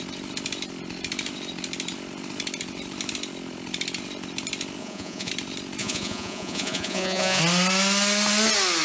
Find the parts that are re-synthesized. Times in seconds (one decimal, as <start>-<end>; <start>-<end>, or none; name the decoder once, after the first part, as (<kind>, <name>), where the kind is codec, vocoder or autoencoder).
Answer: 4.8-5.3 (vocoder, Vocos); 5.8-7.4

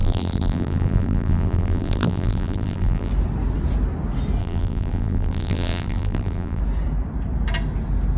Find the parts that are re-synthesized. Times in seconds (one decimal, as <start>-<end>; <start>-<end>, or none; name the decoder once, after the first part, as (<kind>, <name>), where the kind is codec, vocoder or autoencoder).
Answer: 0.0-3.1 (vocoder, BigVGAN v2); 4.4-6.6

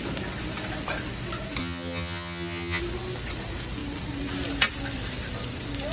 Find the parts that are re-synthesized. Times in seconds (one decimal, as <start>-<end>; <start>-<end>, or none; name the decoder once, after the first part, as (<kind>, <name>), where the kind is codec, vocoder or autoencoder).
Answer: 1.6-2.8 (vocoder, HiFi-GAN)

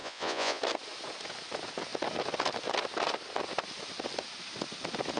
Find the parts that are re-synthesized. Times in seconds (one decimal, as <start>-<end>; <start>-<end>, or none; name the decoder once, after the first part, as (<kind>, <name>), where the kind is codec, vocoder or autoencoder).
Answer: 0.0-0.6 (vocoder, Vocos)